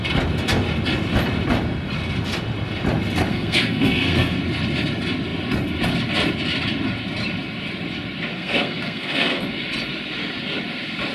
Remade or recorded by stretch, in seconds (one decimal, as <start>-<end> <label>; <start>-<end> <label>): 0.0-3.3 recorded; 3.3-4.4 remade; 4.4-8.3 recorded; 8.3-9.4 remade; 9.4-11.1 recorded